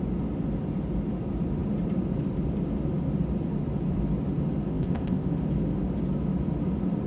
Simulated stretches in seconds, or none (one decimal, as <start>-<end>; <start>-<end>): 4.7-5.3